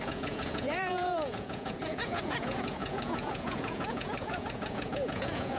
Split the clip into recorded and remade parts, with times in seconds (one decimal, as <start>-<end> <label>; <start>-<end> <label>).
0.0-5.6 remade